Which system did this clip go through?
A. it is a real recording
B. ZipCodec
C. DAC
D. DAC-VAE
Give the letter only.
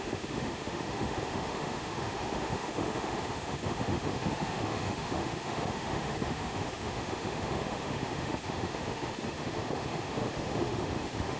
D